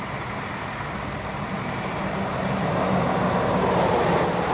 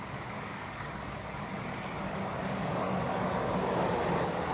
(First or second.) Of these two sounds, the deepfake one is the second